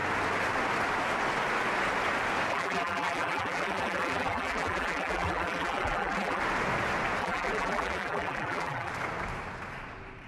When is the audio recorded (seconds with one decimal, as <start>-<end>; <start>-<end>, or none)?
0.0-2.5; 6.4-7.2; 8.9-10.3